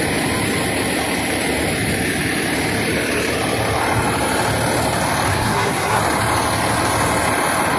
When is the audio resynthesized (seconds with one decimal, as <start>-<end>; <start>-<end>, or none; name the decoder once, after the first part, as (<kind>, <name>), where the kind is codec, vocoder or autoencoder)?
5.3-6.0 (codec, SNAC)